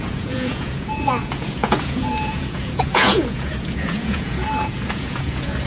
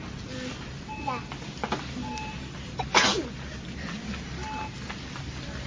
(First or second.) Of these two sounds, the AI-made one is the first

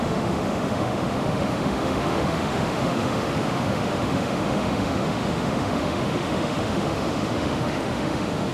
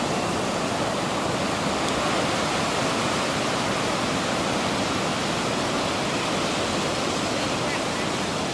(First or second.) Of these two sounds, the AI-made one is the first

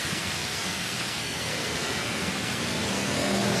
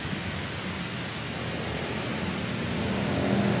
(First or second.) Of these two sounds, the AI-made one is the first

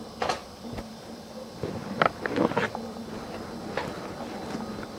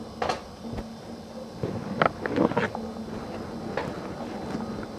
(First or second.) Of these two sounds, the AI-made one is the first